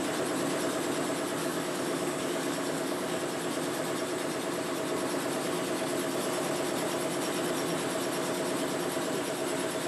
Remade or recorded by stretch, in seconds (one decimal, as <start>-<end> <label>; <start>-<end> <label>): 0.0-1.4 recorded; 1.4-3.2 remade; 3.2-9.9 recorded